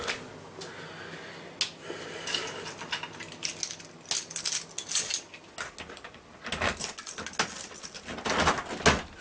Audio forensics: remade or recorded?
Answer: recorded